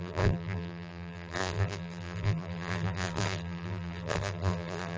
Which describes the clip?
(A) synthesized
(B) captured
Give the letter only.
A